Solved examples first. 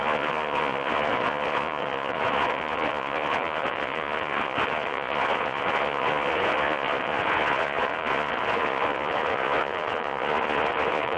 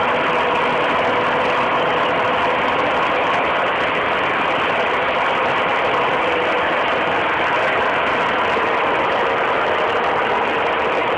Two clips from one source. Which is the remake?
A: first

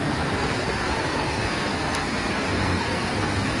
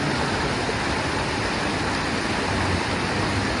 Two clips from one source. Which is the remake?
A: first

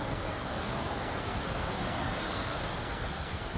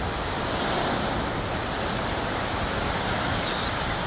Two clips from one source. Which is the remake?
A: first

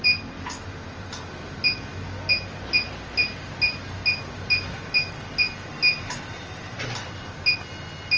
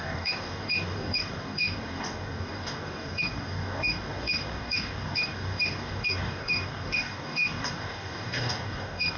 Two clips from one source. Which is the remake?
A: second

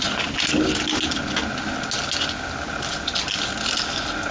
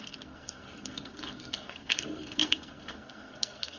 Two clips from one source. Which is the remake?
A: second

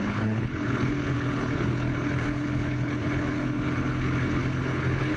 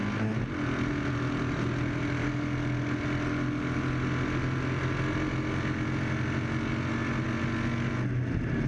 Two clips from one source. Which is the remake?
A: first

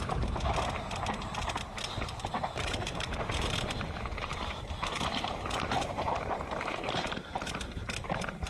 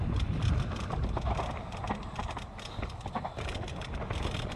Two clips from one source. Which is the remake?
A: first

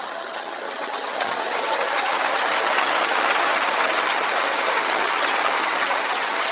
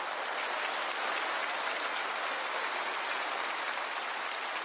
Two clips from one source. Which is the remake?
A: first